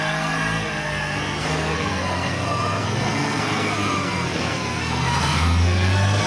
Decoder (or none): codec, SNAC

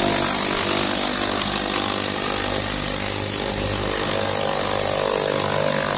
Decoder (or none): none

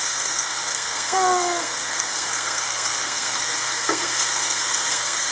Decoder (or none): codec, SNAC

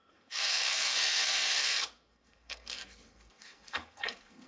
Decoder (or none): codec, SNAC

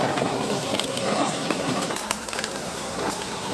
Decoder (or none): codec, SNAC